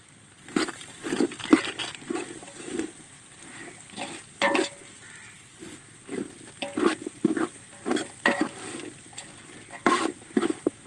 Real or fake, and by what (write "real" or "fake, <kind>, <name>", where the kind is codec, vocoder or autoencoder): real